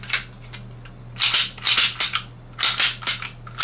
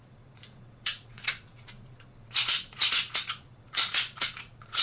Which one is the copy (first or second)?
second